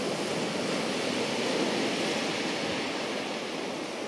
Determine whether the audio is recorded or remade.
recorded